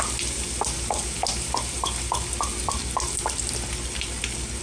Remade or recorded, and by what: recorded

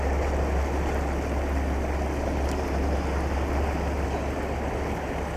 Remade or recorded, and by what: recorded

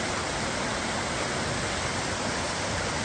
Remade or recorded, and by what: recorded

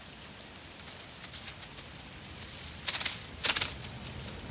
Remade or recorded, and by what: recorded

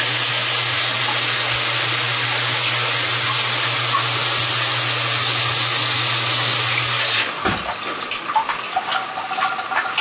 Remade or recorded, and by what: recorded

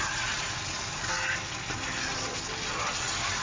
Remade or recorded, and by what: recorded